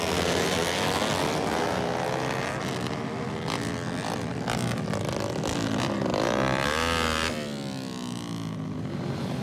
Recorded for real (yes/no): yes